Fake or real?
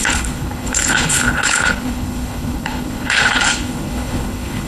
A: fake